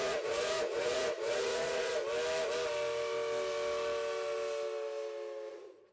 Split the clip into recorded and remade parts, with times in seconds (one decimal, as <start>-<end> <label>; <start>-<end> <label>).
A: 0.0-2.0 remade; 2.0-5.5 recorded; 5.5-5.9 remade